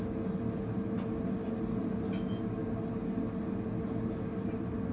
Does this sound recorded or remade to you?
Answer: recorded